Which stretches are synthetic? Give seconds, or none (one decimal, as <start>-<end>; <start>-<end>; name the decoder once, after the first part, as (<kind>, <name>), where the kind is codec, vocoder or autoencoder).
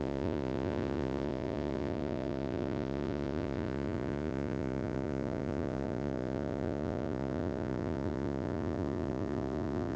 0.0-10.0 (vocoder, Vocos)